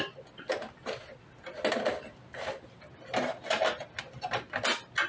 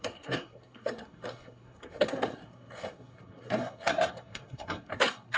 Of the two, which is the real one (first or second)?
first